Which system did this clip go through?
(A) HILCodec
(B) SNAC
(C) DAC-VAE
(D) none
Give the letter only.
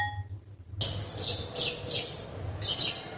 D